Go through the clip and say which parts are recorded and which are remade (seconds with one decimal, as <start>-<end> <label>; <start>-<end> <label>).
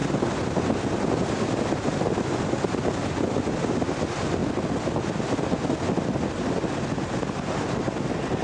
0.0-8.4 recorded